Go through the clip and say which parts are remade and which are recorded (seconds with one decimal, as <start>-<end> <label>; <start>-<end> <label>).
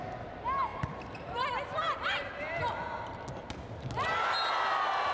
0.0-0.7 recorded; 0.7-2.5 remade; 2.5-5.1 recorded